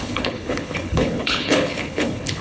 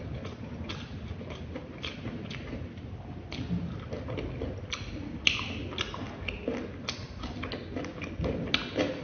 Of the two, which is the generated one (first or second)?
first